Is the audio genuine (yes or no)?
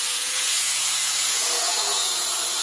no